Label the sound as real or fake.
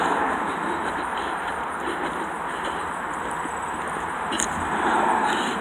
real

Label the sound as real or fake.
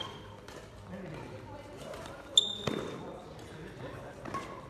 real